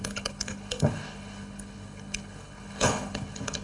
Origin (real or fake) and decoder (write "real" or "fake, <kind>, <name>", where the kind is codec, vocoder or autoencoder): fake, codec, HILCodec